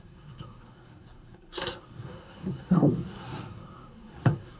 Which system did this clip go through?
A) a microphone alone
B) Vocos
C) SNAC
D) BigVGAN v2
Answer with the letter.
C